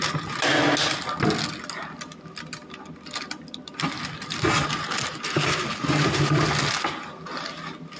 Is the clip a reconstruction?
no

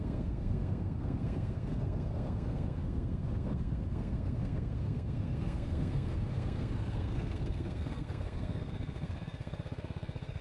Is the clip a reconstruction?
yes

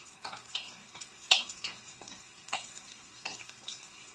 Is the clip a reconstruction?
yes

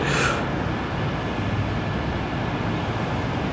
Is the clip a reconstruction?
no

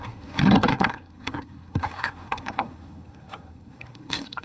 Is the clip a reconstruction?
yes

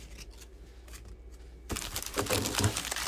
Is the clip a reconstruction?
no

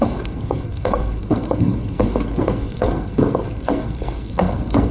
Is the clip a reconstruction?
yes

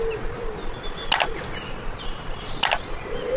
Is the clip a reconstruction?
no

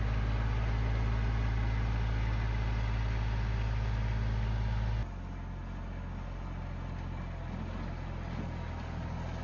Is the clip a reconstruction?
no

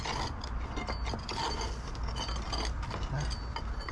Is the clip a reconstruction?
no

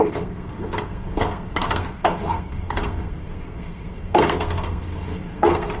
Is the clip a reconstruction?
yes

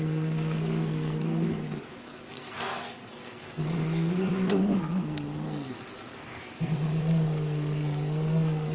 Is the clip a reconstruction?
yes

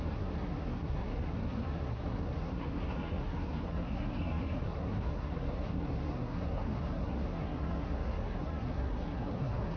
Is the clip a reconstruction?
yes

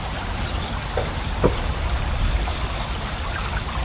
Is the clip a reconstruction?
no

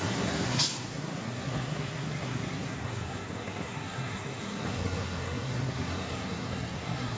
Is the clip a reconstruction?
yes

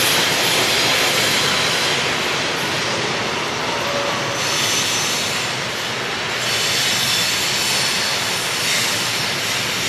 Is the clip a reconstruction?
no